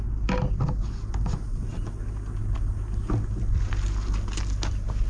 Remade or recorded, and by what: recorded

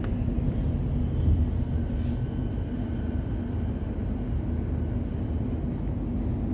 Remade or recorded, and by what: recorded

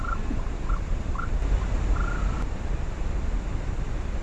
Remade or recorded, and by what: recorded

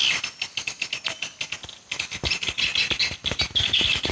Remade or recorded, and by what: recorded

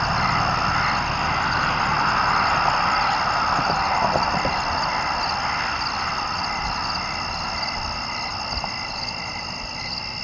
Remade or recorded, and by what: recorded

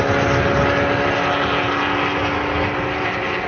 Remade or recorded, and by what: recorded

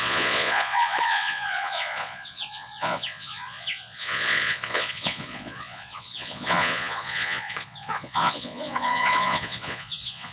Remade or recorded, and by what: remade, vocoder, Vocos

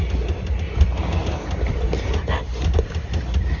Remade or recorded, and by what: recorded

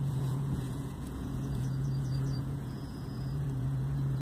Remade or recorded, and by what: remade, vocoder, Vocos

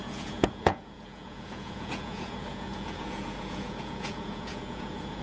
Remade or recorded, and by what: remade, vocoder, Vocos